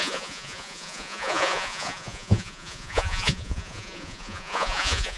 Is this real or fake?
fake